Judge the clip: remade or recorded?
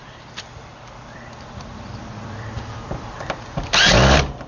remade